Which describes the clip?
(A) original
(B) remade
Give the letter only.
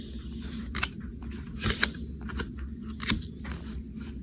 A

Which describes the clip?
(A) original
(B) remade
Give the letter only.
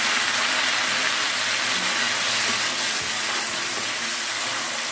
A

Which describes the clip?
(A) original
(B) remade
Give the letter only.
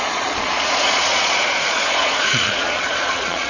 B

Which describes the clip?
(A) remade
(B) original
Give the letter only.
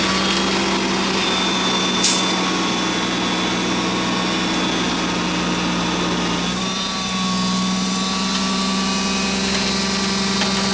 B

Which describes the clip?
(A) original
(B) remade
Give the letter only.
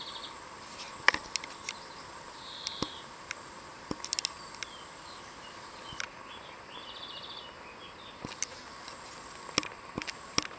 A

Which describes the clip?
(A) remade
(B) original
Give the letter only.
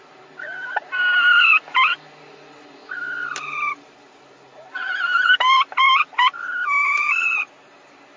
B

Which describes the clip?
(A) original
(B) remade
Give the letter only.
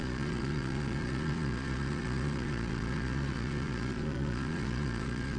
B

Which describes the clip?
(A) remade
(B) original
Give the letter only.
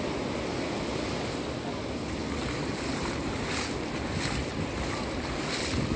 B